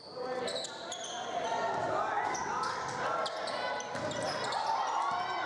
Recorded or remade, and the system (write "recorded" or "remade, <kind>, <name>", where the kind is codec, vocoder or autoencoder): recorded